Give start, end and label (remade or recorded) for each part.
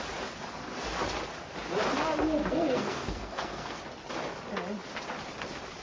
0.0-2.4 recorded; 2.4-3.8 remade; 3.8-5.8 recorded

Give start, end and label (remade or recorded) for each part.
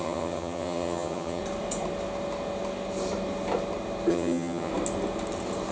0.0-1.4 remade; 1.4-4.1 recorded; 4.1-4.7 remade; 4.7-5.7 recorded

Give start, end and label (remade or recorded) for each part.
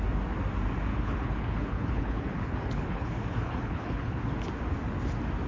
0.0-0.9 recorded; 0.9-4.2 remade; 4.2-5.5 recorded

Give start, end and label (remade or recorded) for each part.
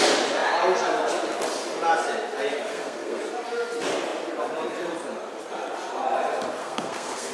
0.0-2.7 recorded; 2.7-3.2 remade; 3.2-6.6 recorded; 6.6-7.3 remade